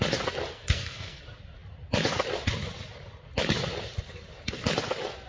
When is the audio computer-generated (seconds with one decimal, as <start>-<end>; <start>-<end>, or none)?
0.5-1.2